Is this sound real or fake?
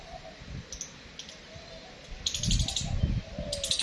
real